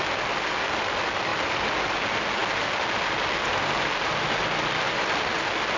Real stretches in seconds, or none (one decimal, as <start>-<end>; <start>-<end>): 0.0-5.8